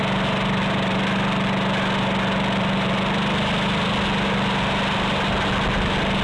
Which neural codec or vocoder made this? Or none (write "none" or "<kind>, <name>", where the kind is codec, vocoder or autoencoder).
none